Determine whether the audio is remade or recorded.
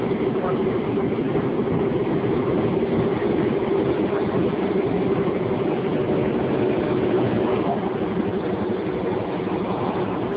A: recorded